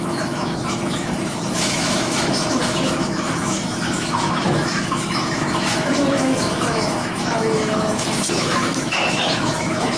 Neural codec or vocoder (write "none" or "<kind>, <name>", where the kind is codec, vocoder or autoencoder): autoencoder, DAC-VAE